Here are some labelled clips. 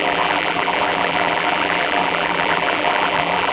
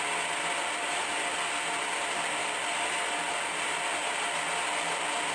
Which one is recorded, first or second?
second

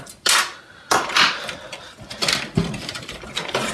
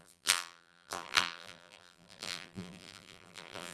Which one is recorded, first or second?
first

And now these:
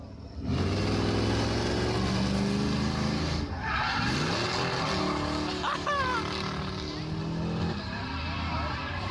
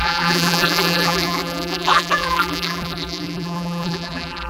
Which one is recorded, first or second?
first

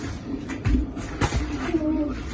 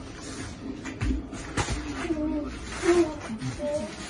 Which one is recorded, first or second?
second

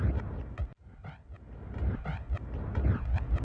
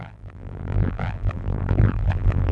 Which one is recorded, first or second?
first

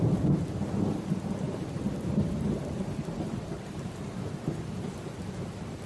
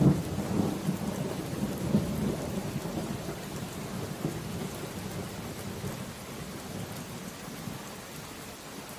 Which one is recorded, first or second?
second